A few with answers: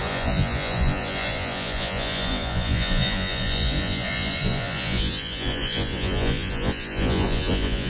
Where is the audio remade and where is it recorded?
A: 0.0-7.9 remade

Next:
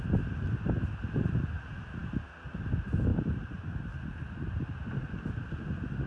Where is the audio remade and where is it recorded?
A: 0.0-6.1 recorded

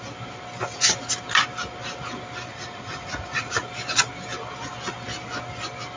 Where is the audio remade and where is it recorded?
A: 0.0-2.5 recorded; 2.5-3.6 remade; 3.6-6.0 recorded

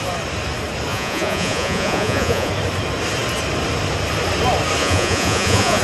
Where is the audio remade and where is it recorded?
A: 0.0-0.9 recorded; 0.9-2.5 remade; 2.5-4.8 recorded; 4.8-5.8 remade

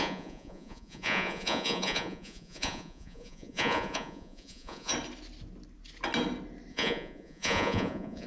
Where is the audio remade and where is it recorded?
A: 0.0-4.9 remade; 4.9-6.7 recorded; 6.7-8.3 remade

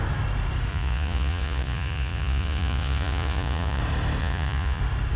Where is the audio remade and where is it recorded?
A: 0.0-0.7 recorded; 0.7-3.8 remade; 3.8-4.2 recorded; 4.2-4.8 remade; 4.8-5.2 recorded

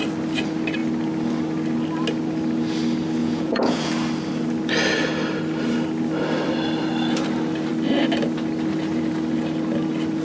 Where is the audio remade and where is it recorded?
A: 0.0-3.2 recorded; 3.2-3.9 remade; 3.9-10.2 recorded